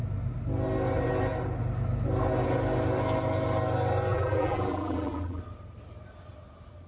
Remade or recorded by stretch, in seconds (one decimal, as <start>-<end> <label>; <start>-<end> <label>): 0.0-4.1 recorded; 4.1-5.4 remade; 5.4-6.9 recorded